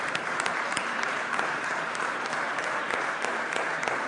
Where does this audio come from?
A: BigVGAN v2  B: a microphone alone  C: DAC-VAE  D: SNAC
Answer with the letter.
A